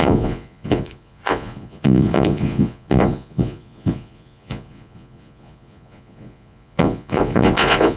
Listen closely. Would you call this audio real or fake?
fake